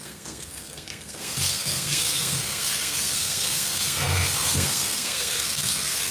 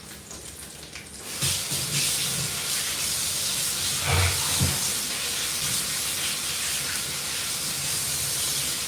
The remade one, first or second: first